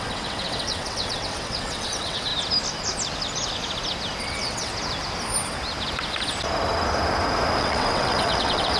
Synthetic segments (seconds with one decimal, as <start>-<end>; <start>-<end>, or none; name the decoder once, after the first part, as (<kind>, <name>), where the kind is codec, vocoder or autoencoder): 0.0-2.3 (vocoder, WaveNeXt); 4.2-4.7; 7.6-8.8